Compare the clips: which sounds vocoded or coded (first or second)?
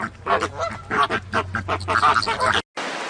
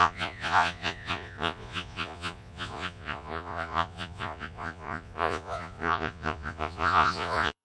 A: second